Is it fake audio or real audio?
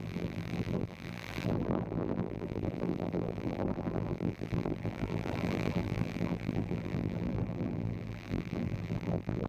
fake